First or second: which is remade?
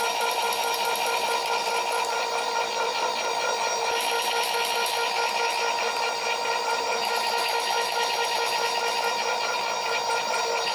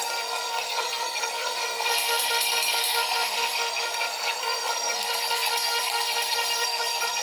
second